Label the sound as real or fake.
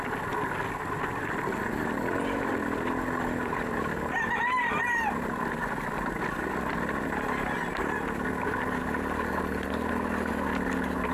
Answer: real